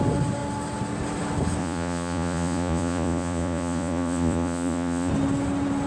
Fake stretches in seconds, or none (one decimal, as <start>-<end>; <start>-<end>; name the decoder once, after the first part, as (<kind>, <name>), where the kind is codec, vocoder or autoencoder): 1.6-5.1 (vocoder, Vocos)